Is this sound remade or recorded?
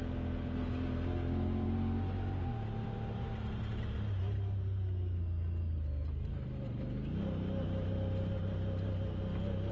recorded